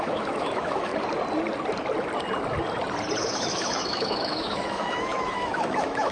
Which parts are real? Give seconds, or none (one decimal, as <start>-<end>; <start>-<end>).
0.9-3.2